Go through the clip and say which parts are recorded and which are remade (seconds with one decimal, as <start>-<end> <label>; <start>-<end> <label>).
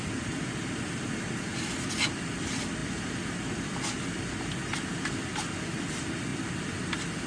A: 0.0-7.3 recorded